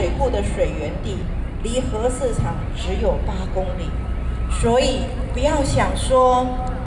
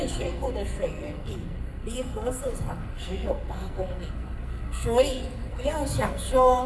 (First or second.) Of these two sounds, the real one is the first